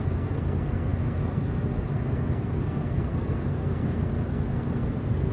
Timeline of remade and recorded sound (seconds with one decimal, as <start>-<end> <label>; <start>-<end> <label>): 0.0-5.3 remade

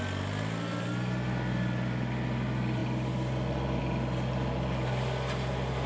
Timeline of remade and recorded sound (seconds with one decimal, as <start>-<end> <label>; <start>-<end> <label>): 0.0-5.9 recorded